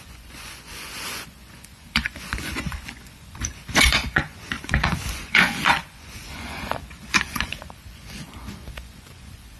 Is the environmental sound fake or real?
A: fake